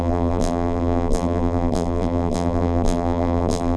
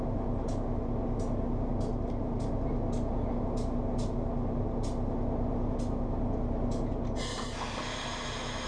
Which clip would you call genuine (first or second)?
second